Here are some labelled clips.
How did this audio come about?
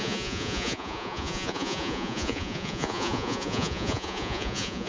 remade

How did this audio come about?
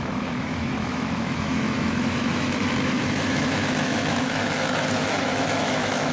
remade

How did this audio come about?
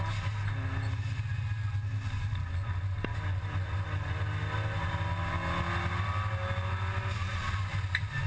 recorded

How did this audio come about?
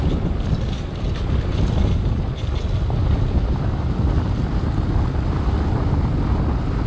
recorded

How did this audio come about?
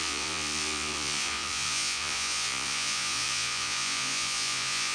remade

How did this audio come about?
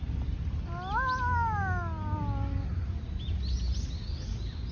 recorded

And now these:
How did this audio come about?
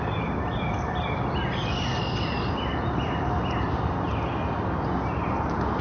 recorded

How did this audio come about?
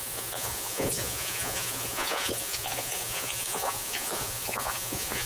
remade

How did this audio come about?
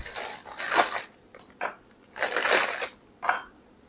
recorded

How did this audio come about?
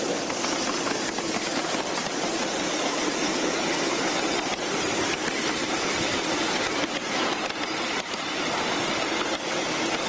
recorded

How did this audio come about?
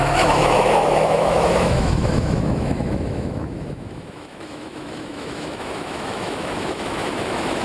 remade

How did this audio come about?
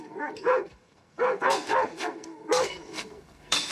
remade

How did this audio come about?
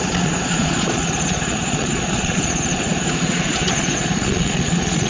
remade